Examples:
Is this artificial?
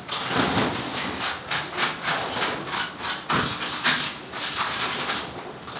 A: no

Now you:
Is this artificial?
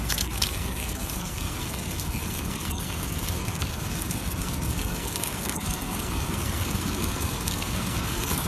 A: yes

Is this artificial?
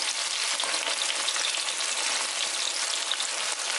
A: no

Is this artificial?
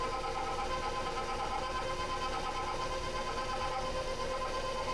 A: no